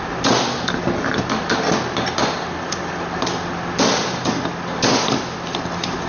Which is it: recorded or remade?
recorded